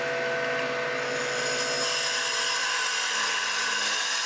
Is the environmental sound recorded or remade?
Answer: recorded